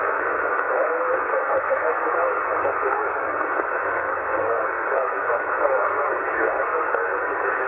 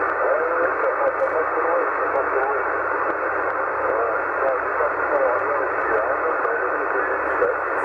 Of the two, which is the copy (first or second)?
first